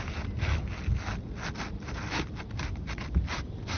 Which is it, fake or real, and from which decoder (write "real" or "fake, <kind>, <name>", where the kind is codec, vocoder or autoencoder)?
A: real